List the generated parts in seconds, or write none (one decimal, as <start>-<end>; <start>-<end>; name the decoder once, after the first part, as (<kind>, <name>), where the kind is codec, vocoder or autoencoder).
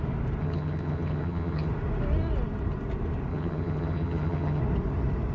0.4-1.7 (vocoder, HiFi-GAN); 3.3-4.6